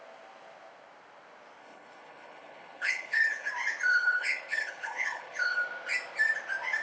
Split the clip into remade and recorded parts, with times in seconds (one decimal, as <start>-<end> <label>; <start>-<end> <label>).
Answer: 0.0-1.6 recorded; 1.6-3.5 remade; 3.5-3.9 recorded; 3.9-5.6 remade; 5.6-6.8 recorded